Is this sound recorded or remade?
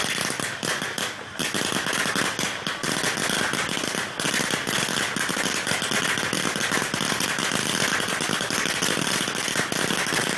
recorded